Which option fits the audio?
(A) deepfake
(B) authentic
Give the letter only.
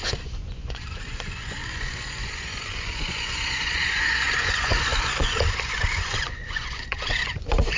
A